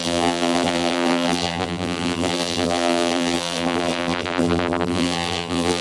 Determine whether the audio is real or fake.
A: fake